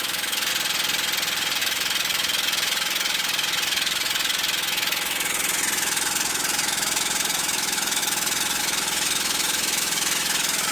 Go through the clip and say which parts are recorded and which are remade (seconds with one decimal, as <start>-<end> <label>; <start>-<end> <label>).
0.0-0.5 remade; 0.5-1.6 recorded; 1.6-10.7 remade